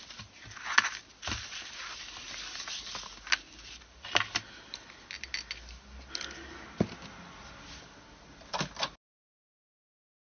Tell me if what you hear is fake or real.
real